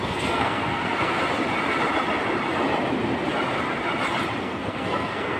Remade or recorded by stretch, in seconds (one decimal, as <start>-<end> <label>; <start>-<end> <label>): 0.0-1.2 remade; 1.2-4.4 recorded; 4.4-5.4 remade